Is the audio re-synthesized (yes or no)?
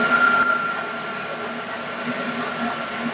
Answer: no